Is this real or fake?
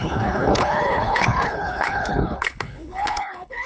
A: fake